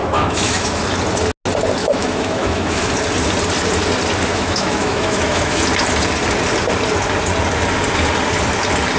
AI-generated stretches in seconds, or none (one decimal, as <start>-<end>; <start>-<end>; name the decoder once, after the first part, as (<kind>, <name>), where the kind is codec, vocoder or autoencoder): 0.0-0.8 (autoencoder, DAC-VAE); 1.8-2.9; 4.3-5.6